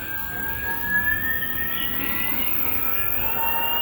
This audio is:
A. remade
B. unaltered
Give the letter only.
B